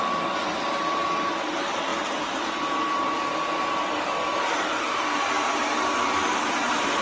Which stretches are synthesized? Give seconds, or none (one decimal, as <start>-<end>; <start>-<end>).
6.0-6.5